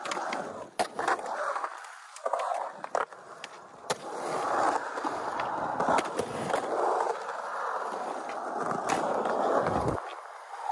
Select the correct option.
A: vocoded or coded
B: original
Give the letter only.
B